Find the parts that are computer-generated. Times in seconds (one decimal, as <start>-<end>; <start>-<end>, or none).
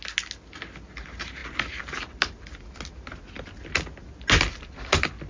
none